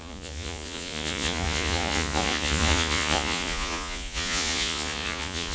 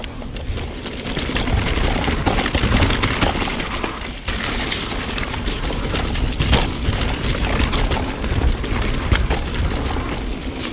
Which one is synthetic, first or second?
first